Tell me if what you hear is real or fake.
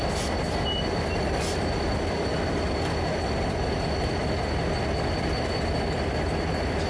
real